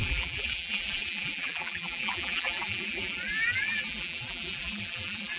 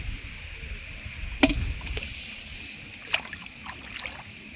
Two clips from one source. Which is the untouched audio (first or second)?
second